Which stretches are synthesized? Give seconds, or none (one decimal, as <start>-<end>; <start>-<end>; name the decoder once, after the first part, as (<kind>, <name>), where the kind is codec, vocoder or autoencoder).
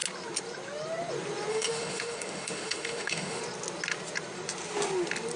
1.5-3.4 (autoencoder, DAC-VAE)